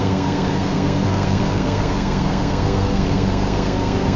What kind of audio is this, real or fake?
fake